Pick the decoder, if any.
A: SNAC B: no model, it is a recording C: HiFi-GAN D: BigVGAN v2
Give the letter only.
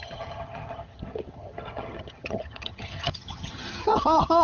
C